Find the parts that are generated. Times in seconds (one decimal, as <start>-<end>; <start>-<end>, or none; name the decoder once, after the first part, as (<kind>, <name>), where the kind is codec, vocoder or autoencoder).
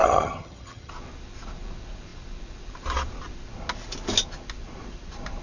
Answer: 0.0-0.9 (vocoder, HiFi-GAN)